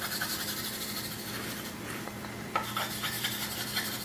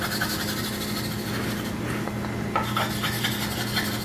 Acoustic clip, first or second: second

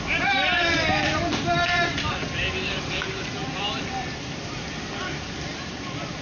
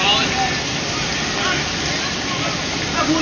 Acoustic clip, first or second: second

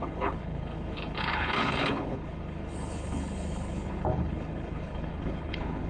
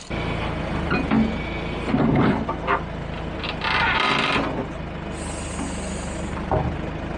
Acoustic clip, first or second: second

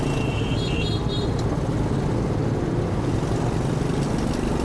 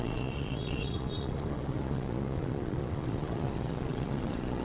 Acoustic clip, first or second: first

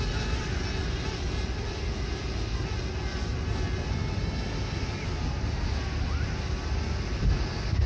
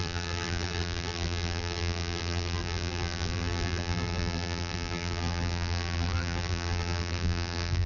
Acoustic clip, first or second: first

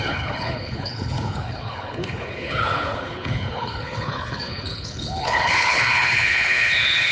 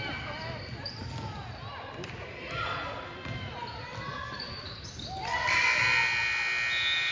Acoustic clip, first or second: second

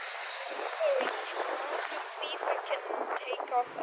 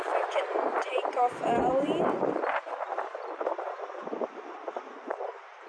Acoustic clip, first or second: first